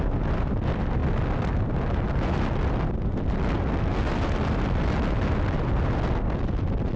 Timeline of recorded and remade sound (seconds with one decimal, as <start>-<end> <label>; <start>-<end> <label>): 0.0-7.0 recorded